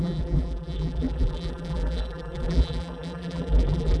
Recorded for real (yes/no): no